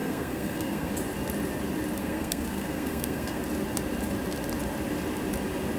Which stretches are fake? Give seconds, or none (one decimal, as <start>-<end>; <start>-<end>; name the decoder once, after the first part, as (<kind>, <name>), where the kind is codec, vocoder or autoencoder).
0.0-0.9 (codec, SNAC); 2.0-3.4